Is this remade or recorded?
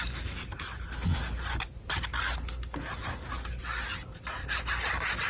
recorded